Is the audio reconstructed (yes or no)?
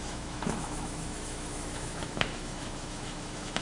yes